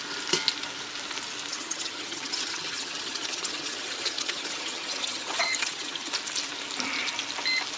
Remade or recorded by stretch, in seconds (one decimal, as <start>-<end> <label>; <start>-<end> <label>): 0.0-1.5 recorded; 1.5-6.1 remade; 6.1-7.8 recorded